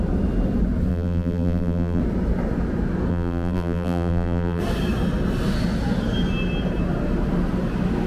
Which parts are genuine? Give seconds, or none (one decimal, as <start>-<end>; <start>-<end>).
0.0-0.9; 2.0-3.1; 4.6-8.1